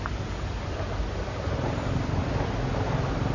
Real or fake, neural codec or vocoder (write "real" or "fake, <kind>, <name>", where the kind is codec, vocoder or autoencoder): real